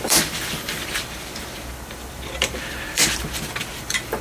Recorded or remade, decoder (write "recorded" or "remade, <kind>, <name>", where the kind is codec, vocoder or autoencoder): remade, vocoder, BigVGAN v2